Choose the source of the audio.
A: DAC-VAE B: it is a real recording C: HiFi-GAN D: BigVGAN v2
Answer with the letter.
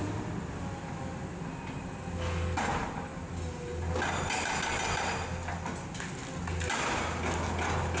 B